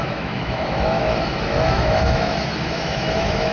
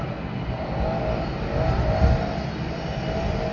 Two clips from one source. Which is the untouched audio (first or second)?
second